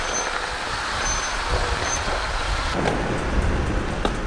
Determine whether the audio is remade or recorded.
recorded